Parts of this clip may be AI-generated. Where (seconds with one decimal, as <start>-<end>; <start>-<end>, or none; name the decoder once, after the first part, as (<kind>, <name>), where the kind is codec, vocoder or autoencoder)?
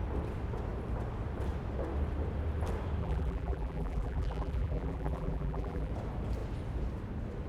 3.0-5.9 (vocoder, BigVGAN v2)